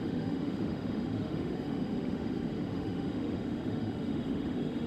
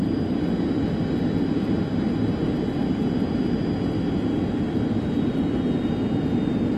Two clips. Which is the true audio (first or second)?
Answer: second